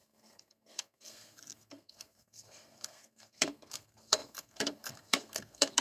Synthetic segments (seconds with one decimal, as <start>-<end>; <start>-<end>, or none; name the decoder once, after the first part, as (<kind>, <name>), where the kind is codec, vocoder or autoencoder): 0.0-5.8 (codec, SNAC)